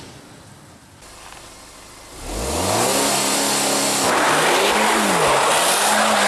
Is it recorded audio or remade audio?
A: recorded